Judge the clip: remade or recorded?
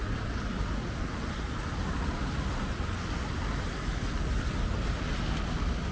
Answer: recorded